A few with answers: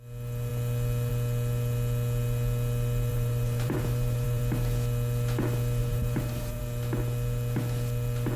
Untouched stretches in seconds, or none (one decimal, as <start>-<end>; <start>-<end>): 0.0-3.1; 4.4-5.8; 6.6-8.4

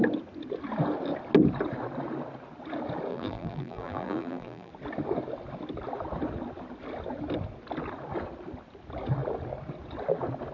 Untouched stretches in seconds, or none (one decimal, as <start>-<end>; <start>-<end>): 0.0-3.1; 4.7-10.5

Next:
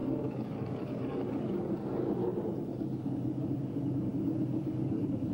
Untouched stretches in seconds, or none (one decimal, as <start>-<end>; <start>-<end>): 2.2-2.9